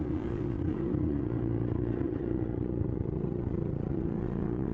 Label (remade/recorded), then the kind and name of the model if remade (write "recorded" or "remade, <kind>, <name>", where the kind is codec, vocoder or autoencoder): remade, vocoder, Vocos